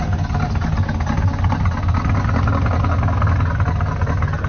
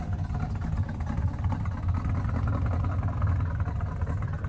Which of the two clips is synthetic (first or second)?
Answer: second